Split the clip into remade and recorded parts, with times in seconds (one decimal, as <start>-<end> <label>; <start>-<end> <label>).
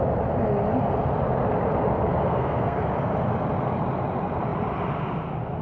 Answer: 0.0-2.2 recorded; 2.2-2.8 remade; 2.8-5.6 recorded